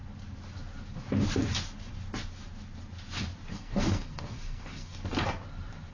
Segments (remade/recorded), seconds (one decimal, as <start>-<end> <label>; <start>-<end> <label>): 0.0-3.5 recorded; 3.5-4.9 remade; 4.9-5.9 recorded